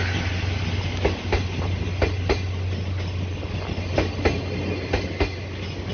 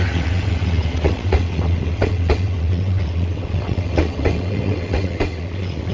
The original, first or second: first